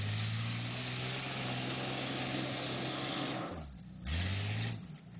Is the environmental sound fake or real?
real